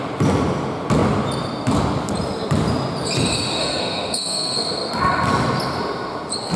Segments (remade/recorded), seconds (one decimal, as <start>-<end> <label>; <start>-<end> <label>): 0.0-3.6 recorded; 3.6-4.9 remade; 4.9-6.6 recorded